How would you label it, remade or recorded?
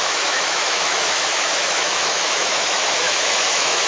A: remade